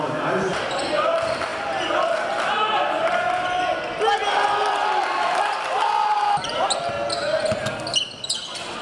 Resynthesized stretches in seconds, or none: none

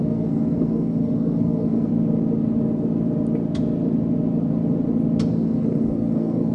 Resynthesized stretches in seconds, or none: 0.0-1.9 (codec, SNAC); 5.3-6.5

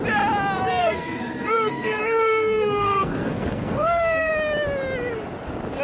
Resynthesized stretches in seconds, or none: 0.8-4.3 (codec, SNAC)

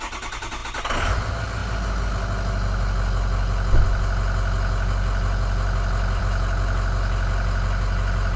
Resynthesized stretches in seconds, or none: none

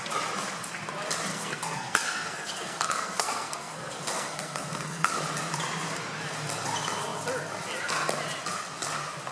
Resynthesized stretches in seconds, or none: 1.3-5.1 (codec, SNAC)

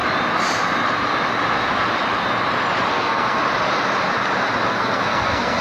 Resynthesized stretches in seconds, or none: 2.9-3.4 (codec, SNAC); 4.7-5.6

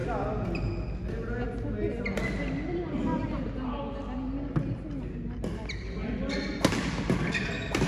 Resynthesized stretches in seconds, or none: none